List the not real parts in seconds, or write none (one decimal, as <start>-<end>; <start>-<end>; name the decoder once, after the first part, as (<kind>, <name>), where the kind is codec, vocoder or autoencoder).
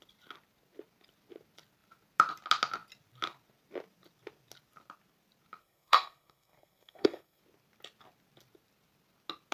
5.6-7.4 (codec, SNAC)